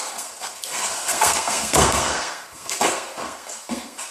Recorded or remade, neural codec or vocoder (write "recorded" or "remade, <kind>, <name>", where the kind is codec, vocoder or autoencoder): remade, codec, SNAC